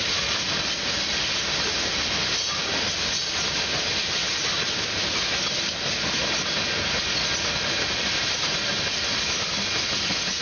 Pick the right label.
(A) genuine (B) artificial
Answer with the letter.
A